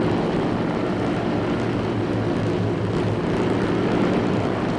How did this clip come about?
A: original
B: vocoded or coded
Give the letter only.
A